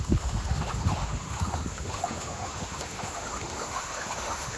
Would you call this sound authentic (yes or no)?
no